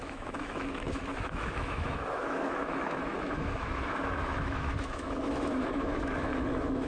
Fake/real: fake